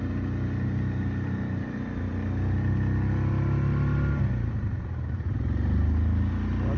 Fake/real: real